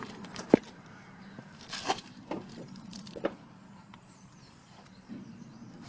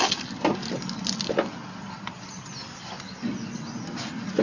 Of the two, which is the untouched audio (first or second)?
second